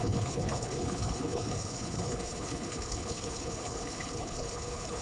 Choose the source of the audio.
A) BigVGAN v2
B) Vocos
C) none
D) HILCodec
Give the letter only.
D